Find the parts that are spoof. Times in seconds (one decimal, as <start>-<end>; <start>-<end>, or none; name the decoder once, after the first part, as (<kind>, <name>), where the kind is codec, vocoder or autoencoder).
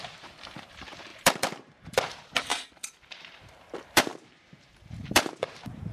0.0-2.5 (vocoder, BigVGAN v2); 3.2-5.9